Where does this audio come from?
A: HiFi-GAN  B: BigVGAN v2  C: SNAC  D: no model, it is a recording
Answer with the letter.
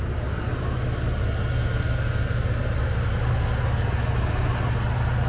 D